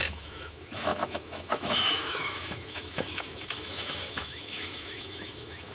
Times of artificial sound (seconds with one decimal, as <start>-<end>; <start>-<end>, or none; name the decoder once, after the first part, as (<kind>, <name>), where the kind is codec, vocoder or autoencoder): 0.0-5.7 (autoencoder, DAC-VAE)